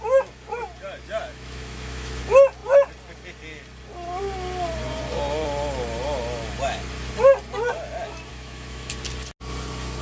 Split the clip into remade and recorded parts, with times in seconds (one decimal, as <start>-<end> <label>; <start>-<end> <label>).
0.0-1.3 recorded; 1.3-2.2 remade; 2.2-8.3 recorded; 8.3-8.9 remade; 8.9-10.0 recorded